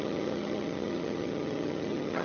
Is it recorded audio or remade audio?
remade